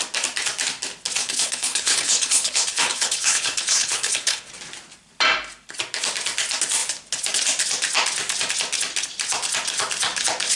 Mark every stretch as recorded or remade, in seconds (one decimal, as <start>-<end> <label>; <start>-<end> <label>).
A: 0.0-1.2 recorded; 1.2-4.5 remade; 4.5-10.6 recorded